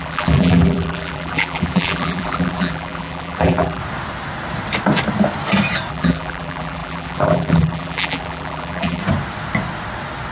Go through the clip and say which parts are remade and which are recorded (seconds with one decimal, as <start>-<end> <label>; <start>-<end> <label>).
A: 0.0-3.8 remade; 3.8-5.9 recorded; 5.9-9.0 remade; 9.0-10.3 recorded